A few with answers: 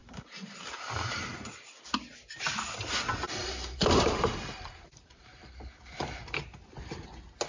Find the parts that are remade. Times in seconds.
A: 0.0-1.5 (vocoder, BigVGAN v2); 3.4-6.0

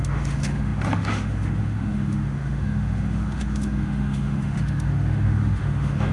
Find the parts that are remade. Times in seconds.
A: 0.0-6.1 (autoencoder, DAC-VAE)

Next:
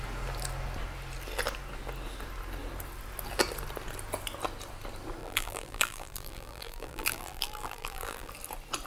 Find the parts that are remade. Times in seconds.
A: 5.2-8.3 (vocoder, BigVGAN v2)